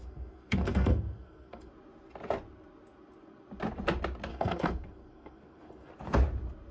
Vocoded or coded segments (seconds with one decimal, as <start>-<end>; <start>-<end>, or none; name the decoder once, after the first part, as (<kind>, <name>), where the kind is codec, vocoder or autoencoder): 0.0-1.7 (codec, SNAC); 4.3-5.9